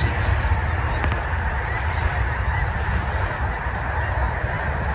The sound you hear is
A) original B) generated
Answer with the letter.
A